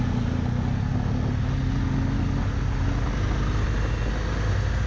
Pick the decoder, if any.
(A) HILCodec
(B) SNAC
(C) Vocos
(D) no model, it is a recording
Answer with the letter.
D